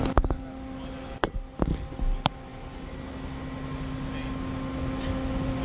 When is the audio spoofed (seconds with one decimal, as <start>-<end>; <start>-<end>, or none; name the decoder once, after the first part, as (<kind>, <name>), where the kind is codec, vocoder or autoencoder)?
none